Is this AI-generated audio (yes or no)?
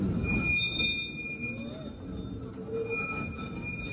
no